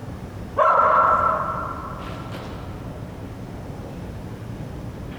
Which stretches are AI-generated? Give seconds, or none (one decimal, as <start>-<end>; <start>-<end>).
none